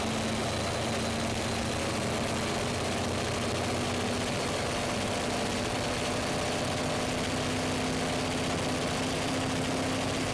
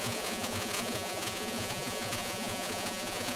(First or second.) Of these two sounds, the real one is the first